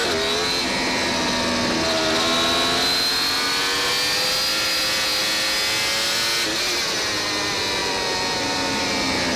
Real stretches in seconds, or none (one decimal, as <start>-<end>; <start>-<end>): 0.0-9.4